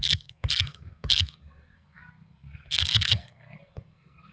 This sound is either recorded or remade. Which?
remade